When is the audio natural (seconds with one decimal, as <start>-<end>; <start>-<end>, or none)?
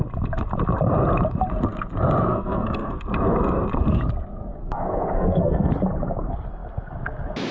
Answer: 0.0-2.3; 3.0-4.5; 5.7-7.5